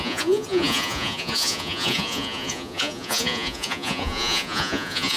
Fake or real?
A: fake